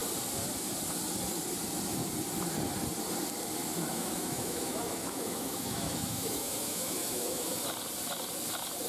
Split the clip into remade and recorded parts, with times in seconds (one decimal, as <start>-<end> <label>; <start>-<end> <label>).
0.0-3.9 recorded; 3.9-7.6 remade; 7.6-8.9 recorded